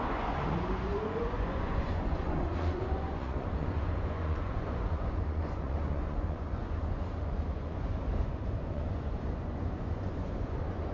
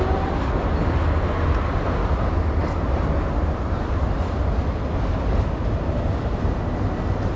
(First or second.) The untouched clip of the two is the second